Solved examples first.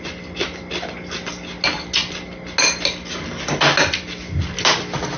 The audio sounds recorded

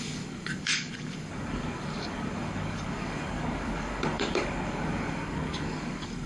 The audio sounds remade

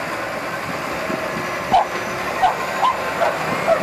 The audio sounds recorded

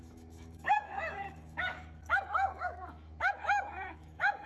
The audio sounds remade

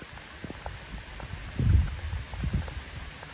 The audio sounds recorded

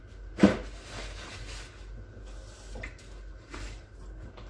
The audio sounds recorded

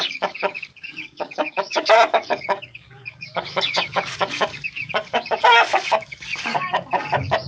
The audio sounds remade